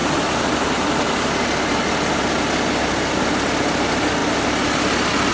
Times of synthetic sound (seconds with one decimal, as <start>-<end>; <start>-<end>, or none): none